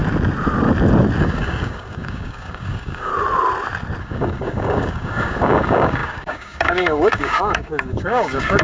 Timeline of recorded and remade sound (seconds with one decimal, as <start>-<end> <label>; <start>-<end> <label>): 0.0-1.2 recorded; 1.2-3.1 remade; 3.1-4.0 recorded; 4.0-8.6 remade